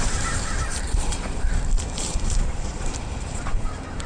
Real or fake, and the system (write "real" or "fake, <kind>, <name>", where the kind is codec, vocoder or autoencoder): fake, vocoder, BigVGAN v2